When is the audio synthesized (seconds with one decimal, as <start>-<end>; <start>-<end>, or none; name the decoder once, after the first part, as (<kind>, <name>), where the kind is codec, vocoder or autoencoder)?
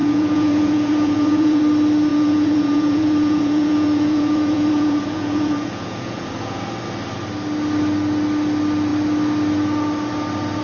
0.0-1.6 (vocoder, Vocos); 2.1-6.7